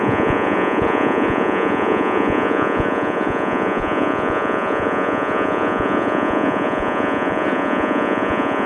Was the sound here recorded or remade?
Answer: remade